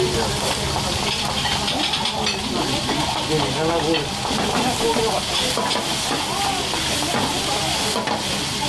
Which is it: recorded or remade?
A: recorded